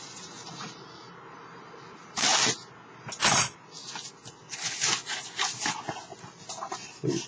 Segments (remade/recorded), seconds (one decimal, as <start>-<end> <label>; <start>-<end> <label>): 0.0-2.3 remade; 2.3-6.2 recorded; 6.2-7.3 remade